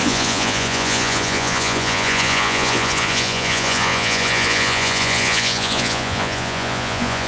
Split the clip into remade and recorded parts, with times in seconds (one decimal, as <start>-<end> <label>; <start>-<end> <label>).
0.0-7.3 remade

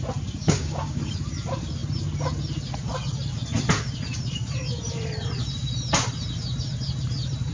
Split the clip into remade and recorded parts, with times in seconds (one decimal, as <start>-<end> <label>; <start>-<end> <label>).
0.0-0.4 recorded; 0.4-1.0 remade; 1.0-7.5 recorded

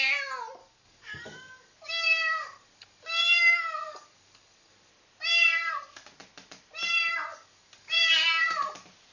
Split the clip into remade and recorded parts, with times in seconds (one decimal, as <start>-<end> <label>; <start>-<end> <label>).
0.0-0.6 recorded; 0.6-4.9 remade; 4.9-7.3 recorded; 7.3-8.5 remade; 8.5-9.1 recorded

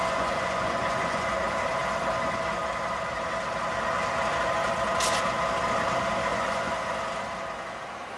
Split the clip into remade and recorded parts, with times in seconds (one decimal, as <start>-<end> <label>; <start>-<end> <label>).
0.0-1.4 remade; 1.4-6.3 recorded; 6.3-7.0 remade; 7.0-8.2 recorded

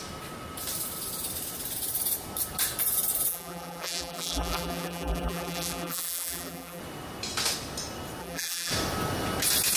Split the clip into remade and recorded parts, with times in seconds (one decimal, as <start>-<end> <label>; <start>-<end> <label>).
0.0-3.3 recorded; 3.3-6.8 remade; 6.8-8.2 recorded; 8.2-8.7 remade; 8.7-9.8 recorded

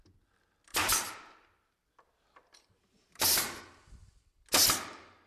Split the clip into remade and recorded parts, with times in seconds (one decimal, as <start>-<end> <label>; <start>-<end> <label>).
0.0-0.7 recorded; 0.7-3.6 remade; 3.6-5.3 recorded